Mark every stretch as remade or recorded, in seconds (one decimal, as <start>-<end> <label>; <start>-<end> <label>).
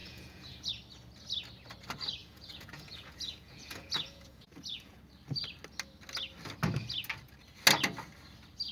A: 0.0-0.7 remade; 0.7-2.2 recorded; 2.2-5.0 remade; 5.0-8.7 recorded